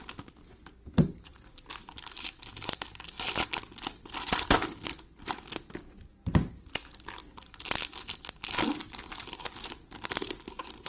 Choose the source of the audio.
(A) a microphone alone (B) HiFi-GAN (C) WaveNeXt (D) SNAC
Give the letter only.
A